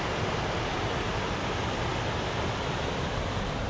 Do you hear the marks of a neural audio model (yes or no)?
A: no